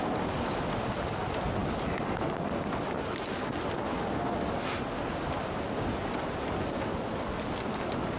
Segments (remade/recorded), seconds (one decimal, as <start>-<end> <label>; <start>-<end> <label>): 0.0-8.2 recorded